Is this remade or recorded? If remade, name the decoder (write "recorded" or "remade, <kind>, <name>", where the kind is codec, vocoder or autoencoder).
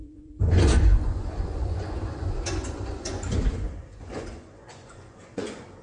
remade, vocoder, Vocos